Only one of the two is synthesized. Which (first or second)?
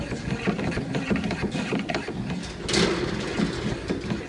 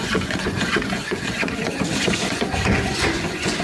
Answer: second